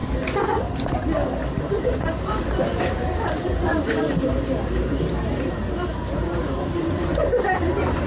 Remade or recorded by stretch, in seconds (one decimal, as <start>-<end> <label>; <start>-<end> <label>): 0.0-0.5 recorded; 0.5-8.1 remade